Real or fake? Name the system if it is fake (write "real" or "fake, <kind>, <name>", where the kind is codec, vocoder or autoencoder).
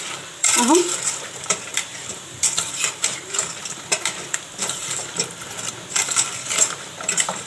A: fake, vocoder, BigVGAN v2